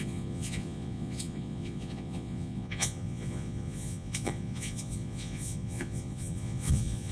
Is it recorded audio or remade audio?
remade